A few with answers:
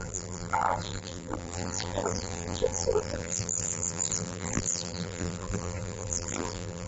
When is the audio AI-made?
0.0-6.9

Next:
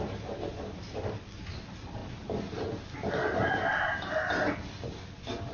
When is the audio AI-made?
3.7-4.4

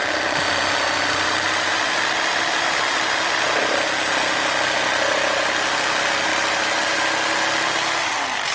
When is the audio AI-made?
0.0-3.6

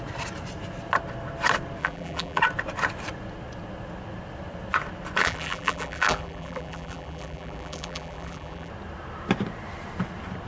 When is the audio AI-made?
1.8-2.4; 5.2-8.7